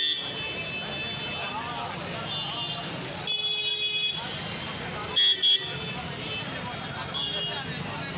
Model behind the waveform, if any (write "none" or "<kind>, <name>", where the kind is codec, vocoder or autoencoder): none